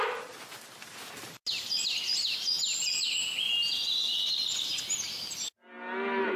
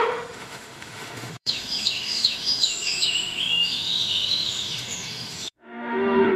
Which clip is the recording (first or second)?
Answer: first